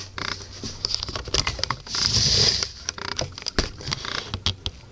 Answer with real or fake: real